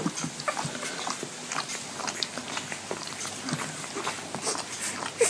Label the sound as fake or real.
real